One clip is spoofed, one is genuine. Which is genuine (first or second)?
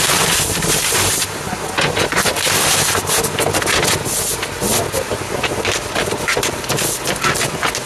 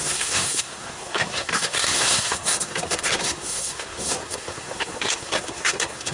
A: first